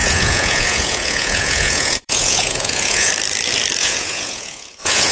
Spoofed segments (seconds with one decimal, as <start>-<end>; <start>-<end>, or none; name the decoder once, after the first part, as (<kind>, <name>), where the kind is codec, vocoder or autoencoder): 0.0-3.1 (vocoder, Vocos); 3.8-5.1